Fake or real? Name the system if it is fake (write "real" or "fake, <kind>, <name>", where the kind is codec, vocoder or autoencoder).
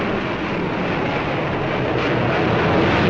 real